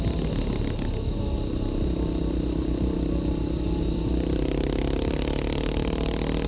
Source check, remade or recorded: recorded